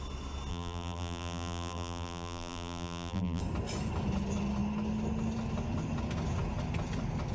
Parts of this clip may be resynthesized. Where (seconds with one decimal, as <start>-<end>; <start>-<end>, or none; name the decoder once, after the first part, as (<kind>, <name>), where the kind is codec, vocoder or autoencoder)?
0.5-3.4 (vocoder, BigVGAN v2)